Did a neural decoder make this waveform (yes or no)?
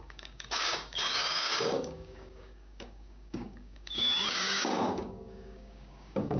yes